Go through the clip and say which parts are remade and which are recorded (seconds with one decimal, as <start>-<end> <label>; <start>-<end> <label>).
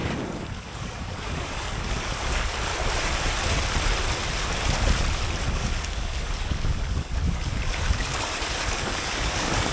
0.0-2.7 remade; 2.7-5.5 recorded; 5.5-9.7 remade